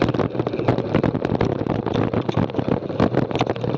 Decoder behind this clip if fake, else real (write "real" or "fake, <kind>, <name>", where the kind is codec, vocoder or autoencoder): real